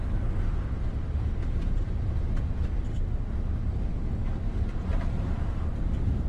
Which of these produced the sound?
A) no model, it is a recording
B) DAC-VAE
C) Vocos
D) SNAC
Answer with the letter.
A